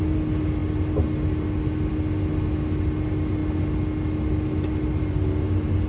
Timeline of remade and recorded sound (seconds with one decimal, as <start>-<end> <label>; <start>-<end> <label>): 0.0-5.9 recorded